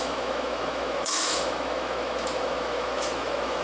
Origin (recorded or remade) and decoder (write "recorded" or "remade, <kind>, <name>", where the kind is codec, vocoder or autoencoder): remade, autoencoder, DAC-VAE